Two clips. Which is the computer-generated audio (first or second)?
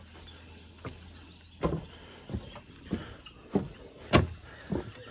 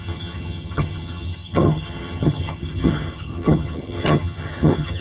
second